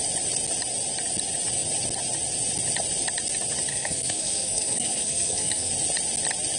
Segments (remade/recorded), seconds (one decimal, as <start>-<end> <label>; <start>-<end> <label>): 0.0-3.7 recorded; 3.7-5.7 remade; 5.7-6.6 recorded

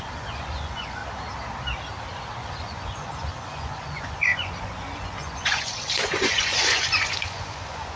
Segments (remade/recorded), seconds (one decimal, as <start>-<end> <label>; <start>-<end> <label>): 0.0-1.0 remade; 1.0-2.4 recorded; 2.4-8.0 remade

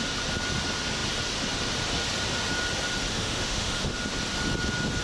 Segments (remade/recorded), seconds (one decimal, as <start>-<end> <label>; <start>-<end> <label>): 0.0-3.1 recorded; 3.1-4.0 remade; 4.0-5.0 recorded